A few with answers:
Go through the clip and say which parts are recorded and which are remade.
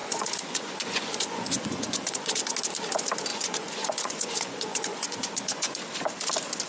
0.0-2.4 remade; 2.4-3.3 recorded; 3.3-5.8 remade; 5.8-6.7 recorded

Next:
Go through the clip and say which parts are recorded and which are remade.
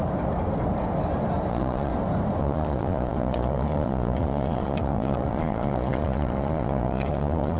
0.0-1.5 recorded; 1.5-1.9 remade; 1.9-2.4 recorded; 2.4-7.6 remade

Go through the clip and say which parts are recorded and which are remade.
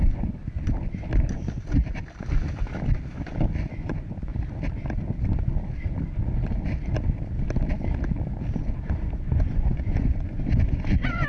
0.0-0.4 remade; 0.4-3.7 recorded; 3.7-4.3 remade; 4.3-8.8 recorded; 8.8-11.3 remade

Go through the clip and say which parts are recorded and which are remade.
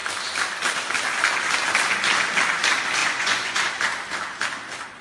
0.0-3.0 recorded; 3.0-3.7 remade; 3.7-5.0 recorded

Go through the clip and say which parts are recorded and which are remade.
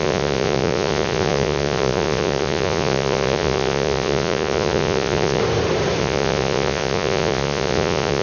0.0-5.4 remade; 5.4-6.0 recorded; 6.0-8.2 remade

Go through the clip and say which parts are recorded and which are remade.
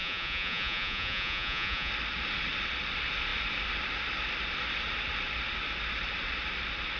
0.0-1.9 remade; 1.9-7.0 recorded